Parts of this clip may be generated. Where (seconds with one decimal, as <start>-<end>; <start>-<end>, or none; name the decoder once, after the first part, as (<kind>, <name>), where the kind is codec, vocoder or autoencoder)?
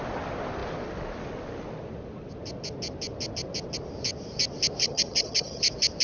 4.8-5.6 (vocoder, HiFi-GAN)